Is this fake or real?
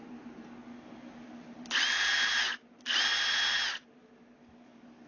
real